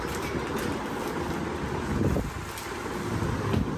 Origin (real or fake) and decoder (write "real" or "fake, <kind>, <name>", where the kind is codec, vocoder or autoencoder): real